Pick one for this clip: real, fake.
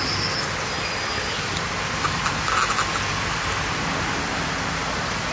real